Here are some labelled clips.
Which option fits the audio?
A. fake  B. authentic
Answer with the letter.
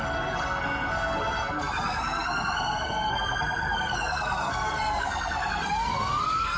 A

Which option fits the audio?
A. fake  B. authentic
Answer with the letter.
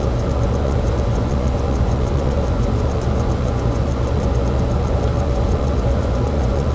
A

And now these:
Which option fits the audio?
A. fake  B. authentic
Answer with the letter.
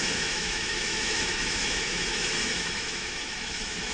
A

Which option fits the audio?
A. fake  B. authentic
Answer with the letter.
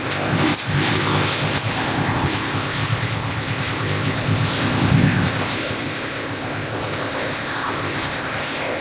A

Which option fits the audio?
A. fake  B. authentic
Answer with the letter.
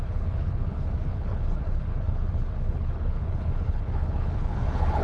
A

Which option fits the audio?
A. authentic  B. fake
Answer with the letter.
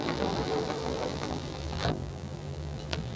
B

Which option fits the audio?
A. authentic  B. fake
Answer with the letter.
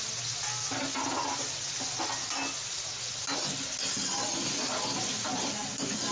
A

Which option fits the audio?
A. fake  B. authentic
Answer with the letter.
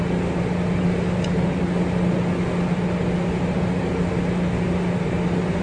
B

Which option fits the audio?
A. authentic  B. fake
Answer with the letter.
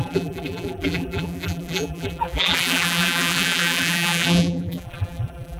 B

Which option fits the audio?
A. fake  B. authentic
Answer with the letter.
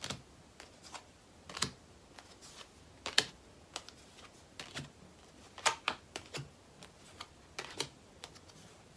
B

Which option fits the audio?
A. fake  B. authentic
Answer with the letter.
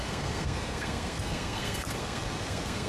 A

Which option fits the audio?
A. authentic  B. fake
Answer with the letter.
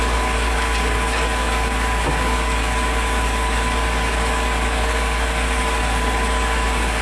B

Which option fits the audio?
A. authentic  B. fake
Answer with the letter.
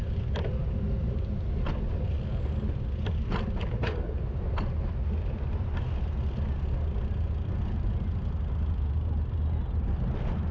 A